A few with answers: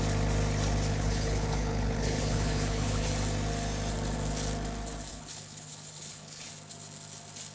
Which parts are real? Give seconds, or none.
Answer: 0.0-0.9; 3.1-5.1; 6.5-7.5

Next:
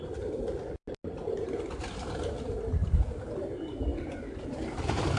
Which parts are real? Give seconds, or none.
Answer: 0.0-5.2

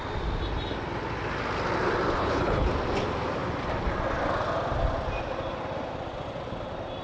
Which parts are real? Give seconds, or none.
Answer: 0.0-2.2; 2.7-7.0

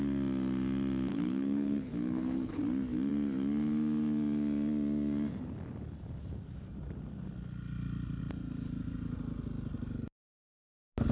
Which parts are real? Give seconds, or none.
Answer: 0.0-1.1; 2.6-11.1

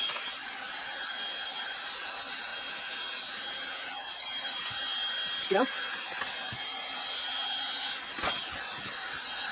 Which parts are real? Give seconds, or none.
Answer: 0.0-9.5